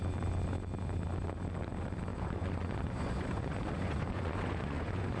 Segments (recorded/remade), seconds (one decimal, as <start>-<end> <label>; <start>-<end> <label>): 0.0-2.1 recorded; 2.1-5.2 remade